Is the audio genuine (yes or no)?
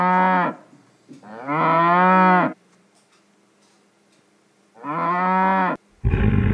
yes